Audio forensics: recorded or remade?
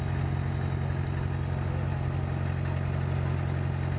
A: recorded